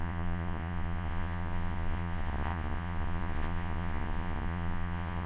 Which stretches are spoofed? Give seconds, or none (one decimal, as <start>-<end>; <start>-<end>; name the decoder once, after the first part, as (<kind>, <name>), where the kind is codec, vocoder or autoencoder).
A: 0.0-5.3 (vocoder, Vocos)